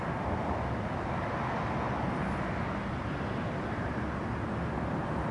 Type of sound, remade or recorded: recorded